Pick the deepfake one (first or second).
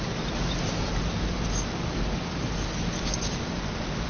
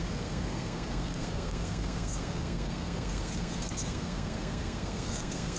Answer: second